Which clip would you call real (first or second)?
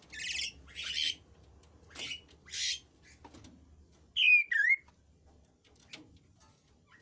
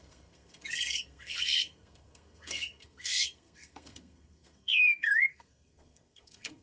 first